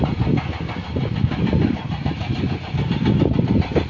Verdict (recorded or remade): remade